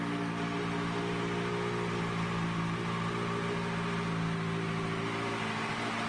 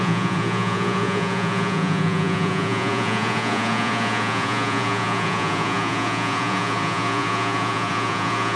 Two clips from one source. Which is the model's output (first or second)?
second